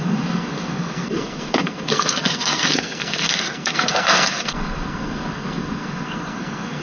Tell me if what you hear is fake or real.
fake